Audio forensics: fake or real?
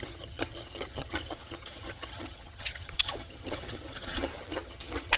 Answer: fake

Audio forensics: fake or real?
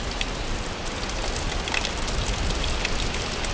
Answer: real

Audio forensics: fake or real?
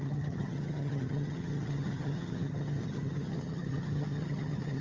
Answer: fake